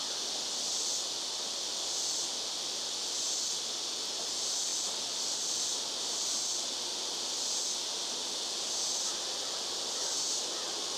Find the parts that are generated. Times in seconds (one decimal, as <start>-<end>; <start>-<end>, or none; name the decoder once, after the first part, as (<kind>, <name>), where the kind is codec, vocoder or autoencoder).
none